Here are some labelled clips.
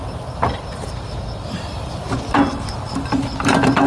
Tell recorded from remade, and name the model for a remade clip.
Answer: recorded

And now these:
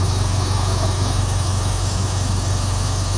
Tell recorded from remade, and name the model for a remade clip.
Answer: remade, autoencoder, DAC-VAE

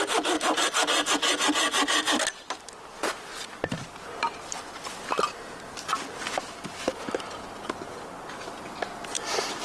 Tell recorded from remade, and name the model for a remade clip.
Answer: recorded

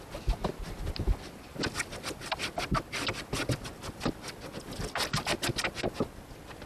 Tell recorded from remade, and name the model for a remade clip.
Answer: recorded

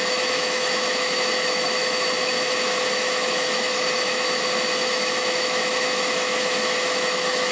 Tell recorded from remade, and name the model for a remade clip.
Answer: remade, autoencoder, DAC-VAE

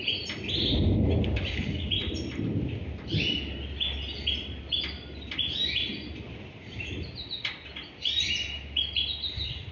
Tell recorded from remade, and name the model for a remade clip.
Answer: recorded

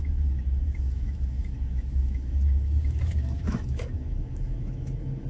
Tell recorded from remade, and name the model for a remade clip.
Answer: remade, autoencoder, DAC-VAE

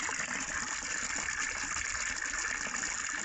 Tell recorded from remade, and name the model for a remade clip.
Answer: recorded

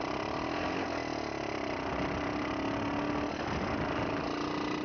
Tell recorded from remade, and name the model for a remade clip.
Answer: recorded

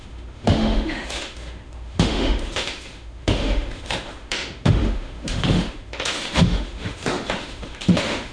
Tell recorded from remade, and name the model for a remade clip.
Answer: remade, autoencoder, DAC-VAE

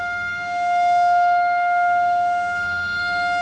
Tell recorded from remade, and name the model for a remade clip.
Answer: remade, autoencoder, DAC-VAE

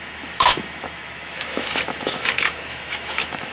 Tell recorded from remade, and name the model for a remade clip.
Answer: remade, autoencoder, DAC-VAE